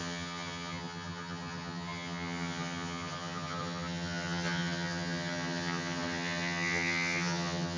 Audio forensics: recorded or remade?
remade